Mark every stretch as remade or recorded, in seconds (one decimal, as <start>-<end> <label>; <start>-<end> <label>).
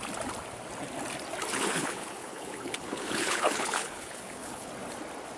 0.0-1.5 recorded; 1.5-4.7 remade; 4.7-5.4 recorded